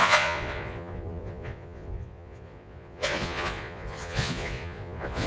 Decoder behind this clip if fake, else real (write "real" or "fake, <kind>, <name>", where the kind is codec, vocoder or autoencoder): fake, vocoder, Vocos